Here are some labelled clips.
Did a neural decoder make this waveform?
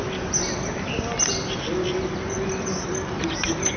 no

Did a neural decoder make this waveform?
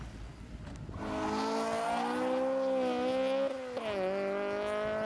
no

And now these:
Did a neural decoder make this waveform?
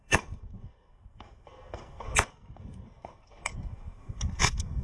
yes